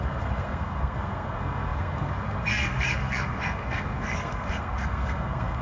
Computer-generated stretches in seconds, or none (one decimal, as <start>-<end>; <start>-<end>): 0.0-5.6